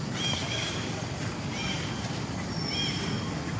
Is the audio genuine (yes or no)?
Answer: yes